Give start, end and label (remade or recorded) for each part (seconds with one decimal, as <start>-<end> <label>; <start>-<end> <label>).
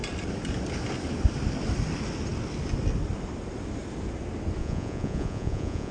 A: 0.0-4.6 recorded; 4.6-5.9 remade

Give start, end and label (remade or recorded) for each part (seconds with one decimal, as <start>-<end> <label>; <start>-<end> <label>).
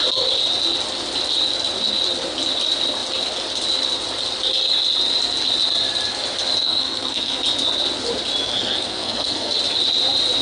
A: 0.0-6.6 recorded; 6.6-7.4 remade; 7.4-8.4 recorded; 8.4-9.5 remade; 9.5-10.4 recorded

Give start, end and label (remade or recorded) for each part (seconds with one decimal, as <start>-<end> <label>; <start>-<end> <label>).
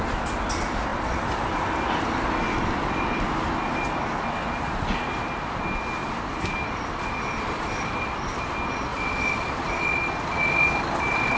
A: 0.0-0.9 recorded; 0.9-3.8 remade; 3.8-6.0 recorded; 6.0-8.5 remade; 8.5-8.9 recorded; 8.9-9.7 remade; 9.7-11.4 recorded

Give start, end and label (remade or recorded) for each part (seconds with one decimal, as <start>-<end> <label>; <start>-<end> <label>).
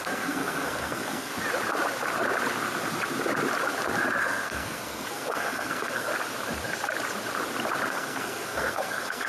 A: 0.0-1.3 remade; 1.3-4.2 recorded; 4.2-6.1 remade; 6.1-7.9 recorded; 7.9-9.3 remade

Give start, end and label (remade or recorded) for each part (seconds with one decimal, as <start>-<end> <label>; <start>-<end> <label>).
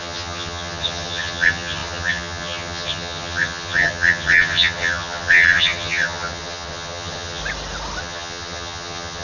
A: 0.0-7.4 remade; 7.4-8.0 recorded; 8.0-9.2 remade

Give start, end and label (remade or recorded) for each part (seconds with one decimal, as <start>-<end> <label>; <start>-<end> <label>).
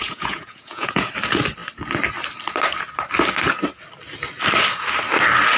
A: 0.0-1.1 remade; 1.1-5.6 recorded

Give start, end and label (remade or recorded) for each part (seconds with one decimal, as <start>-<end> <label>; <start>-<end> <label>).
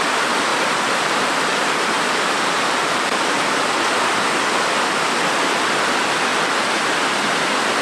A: 0.0-0.5 recorded; 0.5-3.5 remade; 3.5-7.8 recorded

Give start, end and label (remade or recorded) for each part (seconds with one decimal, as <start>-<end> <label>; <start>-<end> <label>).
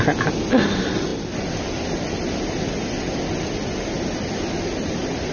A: 0.0-5.3 recorded